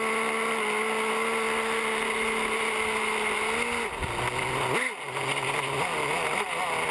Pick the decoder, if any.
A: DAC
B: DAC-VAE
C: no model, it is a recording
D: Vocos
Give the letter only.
C